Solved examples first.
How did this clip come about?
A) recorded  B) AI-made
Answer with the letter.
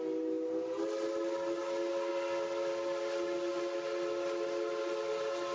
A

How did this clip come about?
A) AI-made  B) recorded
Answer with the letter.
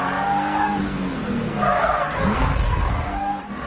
A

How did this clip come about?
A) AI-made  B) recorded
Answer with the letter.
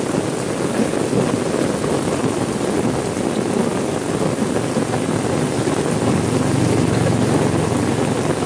B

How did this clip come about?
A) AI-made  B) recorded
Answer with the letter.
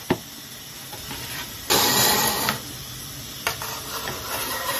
A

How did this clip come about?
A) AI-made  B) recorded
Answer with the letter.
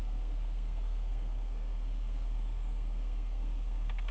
A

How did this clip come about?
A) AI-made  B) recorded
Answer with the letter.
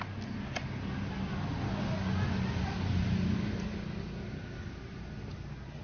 B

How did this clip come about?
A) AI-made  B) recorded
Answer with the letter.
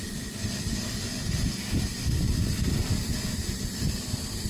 A